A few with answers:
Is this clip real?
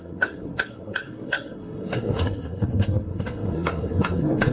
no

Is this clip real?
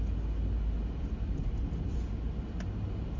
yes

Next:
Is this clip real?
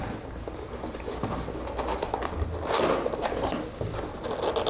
yes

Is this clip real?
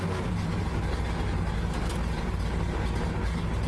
yes